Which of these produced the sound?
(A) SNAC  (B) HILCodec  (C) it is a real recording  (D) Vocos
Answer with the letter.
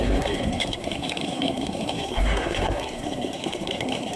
A